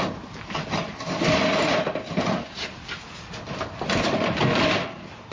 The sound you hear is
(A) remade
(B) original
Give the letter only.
B